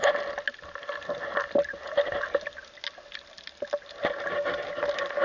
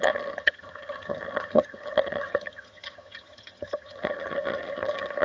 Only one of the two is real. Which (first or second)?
first